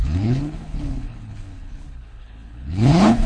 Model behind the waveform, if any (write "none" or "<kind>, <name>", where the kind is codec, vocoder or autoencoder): codec, HILCodec